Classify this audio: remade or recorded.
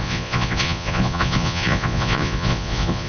remade